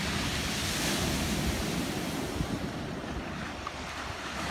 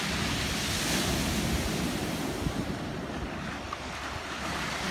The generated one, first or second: first